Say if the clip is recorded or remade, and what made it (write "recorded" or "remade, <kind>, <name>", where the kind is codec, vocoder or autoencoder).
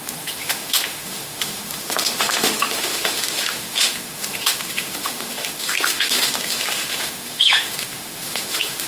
remade, autoencoder, DAC-VAE